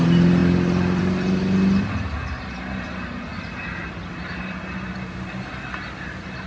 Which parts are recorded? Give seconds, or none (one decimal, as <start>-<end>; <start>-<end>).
0.0-6.5